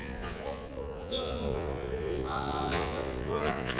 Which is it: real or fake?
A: fake